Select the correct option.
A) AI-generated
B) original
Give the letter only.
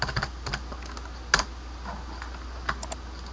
B